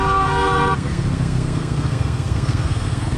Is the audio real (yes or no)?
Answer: no